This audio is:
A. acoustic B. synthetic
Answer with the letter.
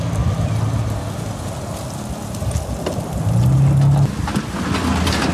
A